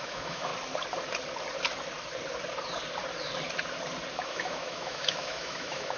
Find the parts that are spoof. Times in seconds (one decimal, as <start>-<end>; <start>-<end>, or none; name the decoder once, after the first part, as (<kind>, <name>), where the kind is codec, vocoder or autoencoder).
0.0-0.5 (autoencoder, DAC-VAE); 4.1-6.0